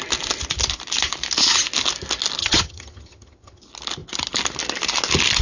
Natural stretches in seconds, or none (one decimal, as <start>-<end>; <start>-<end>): 0.0-2.4; 3.6-5.4